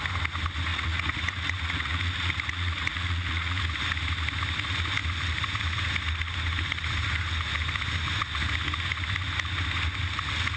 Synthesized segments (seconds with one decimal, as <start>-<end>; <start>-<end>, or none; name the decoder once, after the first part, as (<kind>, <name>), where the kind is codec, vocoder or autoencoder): 0.7-3.6 (vocoder, Vocos)

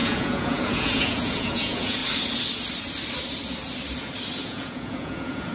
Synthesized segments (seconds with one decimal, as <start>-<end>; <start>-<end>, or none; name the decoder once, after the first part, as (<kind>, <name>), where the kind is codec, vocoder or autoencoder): 0.0-2.0 (vocoder, Vocos); 4.4-5.5